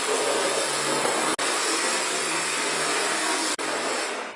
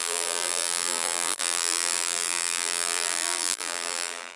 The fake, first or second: second